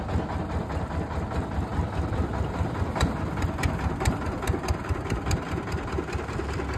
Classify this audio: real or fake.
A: real